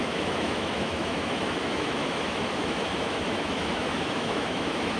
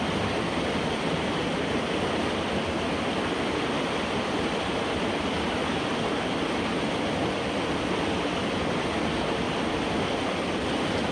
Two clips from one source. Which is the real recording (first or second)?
second